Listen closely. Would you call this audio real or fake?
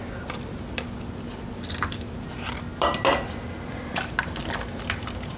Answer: fake